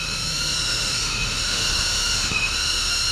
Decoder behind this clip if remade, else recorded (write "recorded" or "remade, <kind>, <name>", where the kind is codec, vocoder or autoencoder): remade, autoencoder, DAC-VAE